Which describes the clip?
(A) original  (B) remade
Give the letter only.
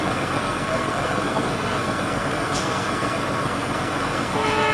B